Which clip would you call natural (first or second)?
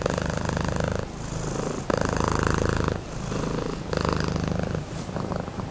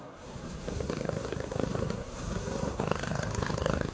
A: first